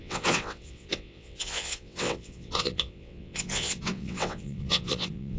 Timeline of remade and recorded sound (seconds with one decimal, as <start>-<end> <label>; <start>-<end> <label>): 0.0-5.4 remade

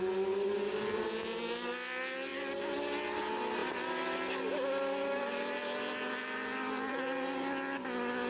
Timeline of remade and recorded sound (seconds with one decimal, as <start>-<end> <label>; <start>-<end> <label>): 0.0-8.3 recorded

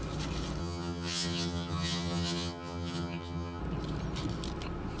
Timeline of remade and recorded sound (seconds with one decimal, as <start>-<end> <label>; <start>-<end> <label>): 0.0-0.6 recorded; 0.6-3.6 remade; 3.6-5.0 recorded

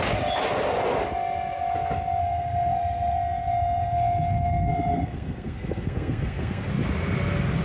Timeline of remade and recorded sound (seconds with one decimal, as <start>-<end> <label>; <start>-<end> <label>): 0.0-2.2 recorded; 2.2-6.7 remade; 6.7-7.6 recorded

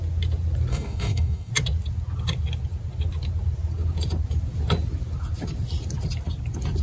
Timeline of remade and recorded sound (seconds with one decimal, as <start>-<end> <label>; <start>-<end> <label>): 0.0-0.7 recorded; 0.7-1.5 remade; 1.5-6.8 recorded

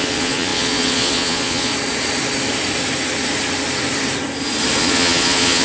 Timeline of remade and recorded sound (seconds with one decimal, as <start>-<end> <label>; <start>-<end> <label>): 0.0-1.7 remade; 1.7-4.8 recorded; 4.8-5.6 remade

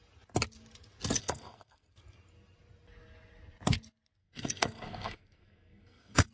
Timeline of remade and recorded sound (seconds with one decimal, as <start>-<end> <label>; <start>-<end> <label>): 0.0-1.2 recorded; 1.2-1.9 remade; 1.9-4.2 recorded; 4.2-6.3 remade

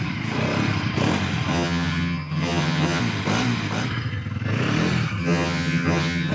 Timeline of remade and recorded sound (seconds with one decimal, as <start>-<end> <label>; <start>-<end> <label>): 0.0-1.5 recorded; 1.5-3.0 remade; 3.0-5.2 recorded; 5.2-6.3 remade